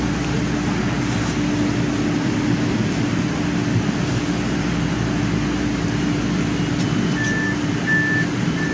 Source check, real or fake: real